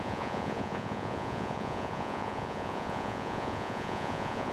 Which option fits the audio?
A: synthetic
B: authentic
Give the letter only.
A